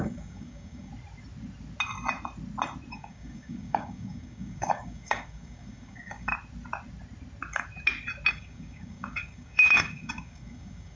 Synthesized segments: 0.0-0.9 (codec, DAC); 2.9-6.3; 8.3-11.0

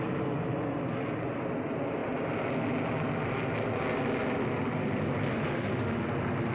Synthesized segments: 5.3-6.0 (autoencoder, DAC-VAE)